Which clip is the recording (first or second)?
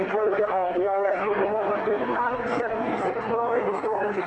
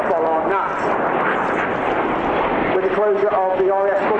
second